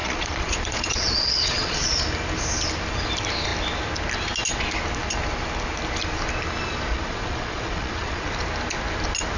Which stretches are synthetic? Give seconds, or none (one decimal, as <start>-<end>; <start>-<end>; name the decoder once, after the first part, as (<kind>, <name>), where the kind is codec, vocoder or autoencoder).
0.0-1.9 (vocoder, Vocos); 6.9-8.3